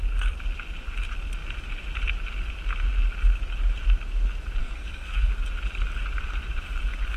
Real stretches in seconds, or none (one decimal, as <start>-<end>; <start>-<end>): 0.0-4.6; 5.3-7.2